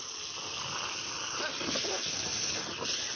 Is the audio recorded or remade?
recorded